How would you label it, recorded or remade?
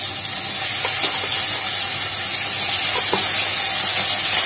recorded